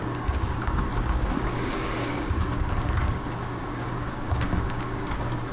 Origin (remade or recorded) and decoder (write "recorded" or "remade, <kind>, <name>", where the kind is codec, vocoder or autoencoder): remade, codec, DAC